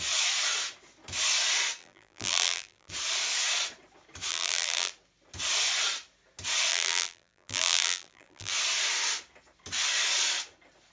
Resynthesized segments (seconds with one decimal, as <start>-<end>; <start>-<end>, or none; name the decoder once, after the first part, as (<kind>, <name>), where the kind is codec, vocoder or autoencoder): 1.8-2.9 (vocoder, BigVGAN v2); 4.3-4.9; 6.7-8.5